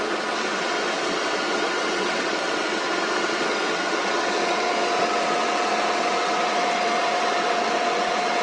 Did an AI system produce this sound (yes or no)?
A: yes